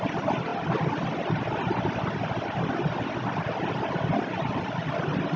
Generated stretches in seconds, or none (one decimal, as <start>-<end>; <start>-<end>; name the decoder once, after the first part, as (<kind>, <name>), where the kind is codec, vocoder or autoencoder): 4.3-4.9 (vocoder, BigVGAN v2)